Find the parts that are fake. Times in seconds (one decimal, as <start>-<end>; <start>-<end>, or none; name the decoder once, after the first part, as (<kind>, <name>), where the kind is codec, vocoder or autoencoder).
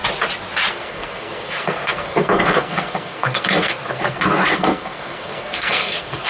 0.7-6.3 (codec, SNAC)